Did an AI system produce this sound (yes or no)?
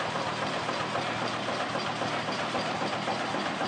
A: no